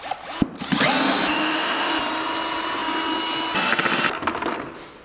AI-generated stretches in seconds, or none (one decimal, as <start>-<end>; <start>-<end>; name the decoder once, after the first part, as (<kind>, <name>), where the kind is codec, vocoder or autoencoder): 1.3-1.9 (autoencoder, DAC-VAE)